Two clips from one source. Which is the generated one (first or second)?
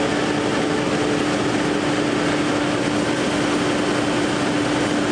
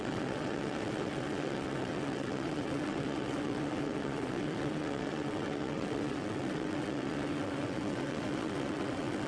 second